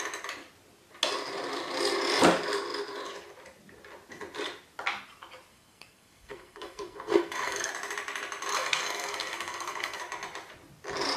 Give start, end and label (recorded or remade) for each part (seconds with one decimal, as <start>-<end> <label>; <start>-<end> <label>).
0.0-5.5 recorded; 5.5-7.7 remade; 7.7-8.5 recorded; 8.5-10.0 remade; 10.0-11.2 recorded